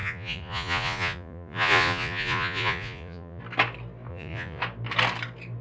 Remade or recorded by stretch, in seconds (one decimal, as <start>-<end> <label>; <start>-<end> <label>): 0.0-3.4 remade; 3.4-4.1 recorded; 4.1-4.6 remade; 4.6-5.6 recorded